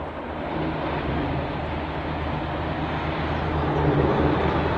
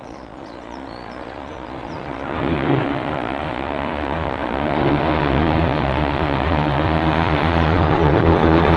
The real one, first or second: first